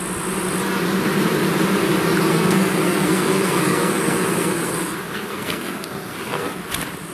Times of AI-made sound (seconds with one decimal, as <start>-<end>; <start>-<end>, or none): 2.3-6.6